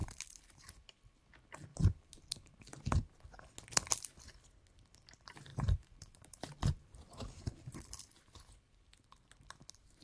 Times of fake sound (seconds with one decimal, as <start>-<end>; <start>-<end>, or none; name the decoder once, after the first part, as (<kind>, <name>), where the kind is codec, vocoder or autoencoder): 0.0-0.7 (vocoder, BigVGAN v2); 1.7-2.5; 5.5-8.0